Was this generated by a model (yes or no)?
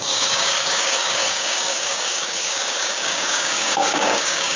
yes